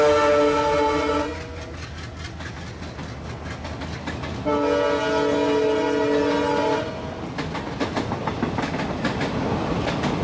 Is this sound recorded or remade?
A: recorded